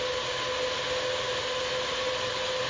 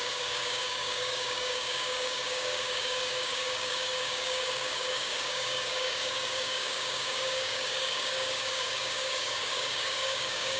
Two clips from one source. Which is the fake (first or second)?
second